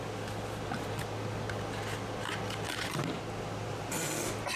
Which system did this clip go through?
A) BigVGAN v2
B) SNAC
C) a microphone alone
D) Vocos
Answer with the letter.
C